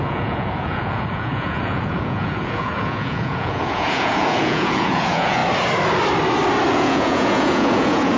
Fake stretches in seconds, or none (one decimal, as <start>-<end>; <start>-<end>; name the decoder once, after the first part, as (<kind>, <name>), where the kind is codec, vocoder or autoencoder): 0.0-5.4 (vocoder, Vocos); 6.7-8.2